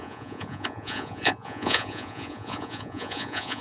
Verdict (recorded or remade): remade